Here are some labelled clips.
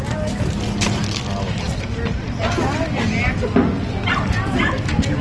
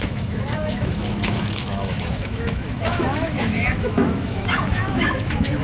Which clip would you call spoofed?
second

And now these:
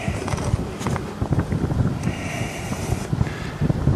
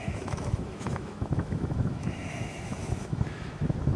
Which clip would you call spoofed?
second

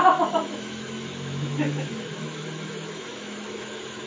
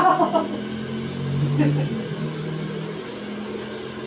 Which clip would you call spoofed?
first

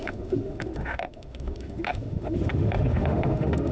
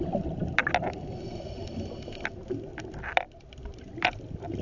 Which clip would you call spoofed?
first